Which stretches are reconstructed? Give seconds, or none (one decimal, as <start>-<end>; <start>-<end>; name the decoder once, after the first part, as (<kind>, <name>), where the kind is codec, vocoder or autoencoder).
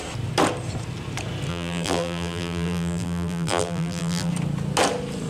1.5-4.3 (vocoder, BigVGAN v2)